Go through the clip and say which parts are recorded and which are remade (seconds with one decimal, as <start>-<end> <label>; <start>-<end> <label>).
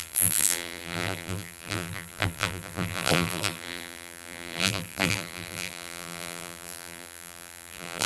0.0-8.1 remade